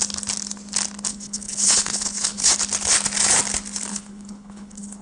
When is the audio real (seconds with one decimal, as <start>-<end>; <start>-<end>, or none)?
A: 0.0-1.1; 2.5-3.9